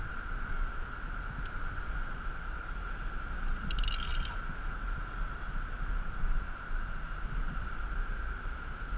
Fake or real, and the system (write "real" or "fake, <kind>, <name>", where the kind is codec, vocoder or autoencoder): real